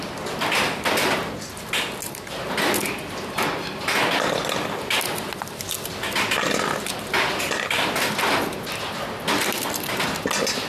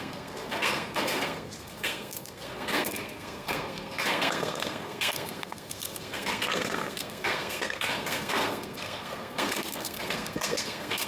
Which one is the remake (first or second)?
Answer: second